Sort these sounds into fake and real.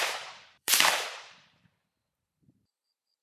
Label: fake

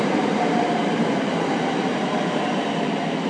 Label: fake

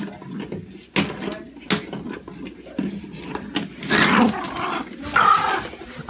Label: real